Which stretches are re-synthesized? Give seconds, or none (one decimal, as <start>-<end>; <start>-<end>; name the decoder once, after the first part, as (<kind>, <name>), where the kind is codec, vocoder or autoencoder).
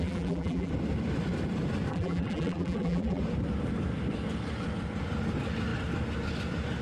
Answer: 0.0-0.7 (vocoder, BigVGAN v2); 1.9-3.2